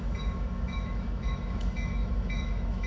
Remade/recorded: remade